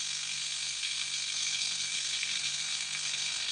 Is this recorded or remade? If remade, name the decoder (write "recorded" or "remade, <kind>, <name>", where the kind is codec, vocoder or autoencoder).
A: remade, codec, SNAC